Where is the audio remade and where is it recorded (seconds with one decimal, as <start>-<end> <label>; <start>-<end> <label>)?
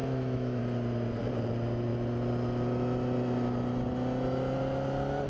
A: 0.0-0.6 remade; 0.6-5.3 recorded